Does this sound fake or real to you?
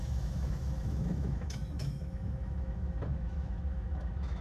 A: fake